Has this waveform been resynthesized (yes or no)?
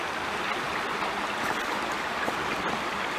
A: no